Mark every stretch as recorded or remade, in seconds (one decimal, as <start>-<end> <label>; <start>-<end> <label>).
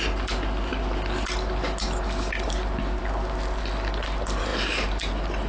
0.0-5.5 recorded